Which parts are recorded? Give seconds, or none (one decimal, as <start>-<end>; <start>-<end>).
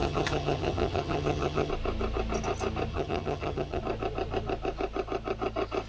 1.7-2.9; 3.8-5.9